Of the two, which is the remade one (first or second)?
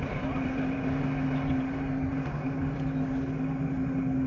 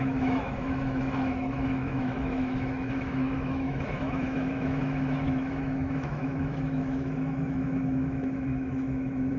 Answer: second